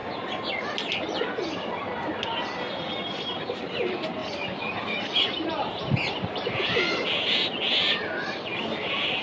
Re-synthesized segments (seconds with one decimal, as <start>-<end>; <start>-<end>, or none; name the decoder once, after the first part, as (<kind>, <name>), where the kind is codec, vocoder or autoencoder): none